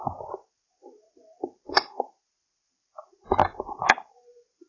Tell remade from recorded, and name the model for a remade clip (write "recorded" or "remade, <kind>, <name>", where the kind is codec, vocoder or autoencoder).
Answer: recorded